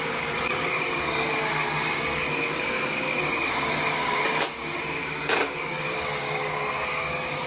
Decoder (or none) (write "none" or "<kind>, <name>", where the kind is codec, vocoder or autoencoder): codec, DAC